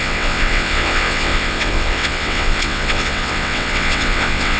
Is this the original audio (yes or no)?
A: no